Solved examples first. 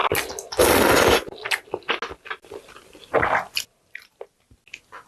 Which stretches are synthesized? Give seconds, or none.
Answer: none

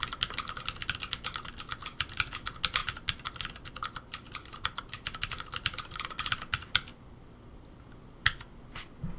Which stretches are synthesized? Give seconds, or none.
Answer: 2.8-6.3 (vocoder, BigVGAN v2); 6.9-7.8

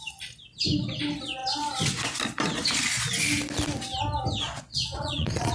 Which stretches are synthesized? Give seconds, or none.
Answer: 4.4-5.5 (vocoder, Vocos)

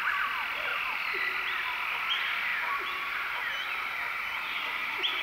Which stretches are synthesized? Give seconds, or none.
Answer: 0.0-0.7 (vocoder, BigVGAN v2); 2.1-2.5

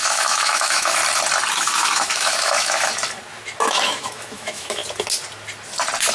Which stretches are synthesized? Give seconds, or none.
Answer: 0.0-1.0 (autoencoder, DAC-VAE); 1.5-2.9; 3.6-4.8

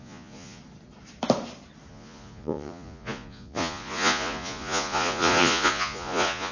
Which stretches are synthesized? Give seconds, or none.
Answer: 0.0-0.6 (vocoder, Vocos); 1.9-6.5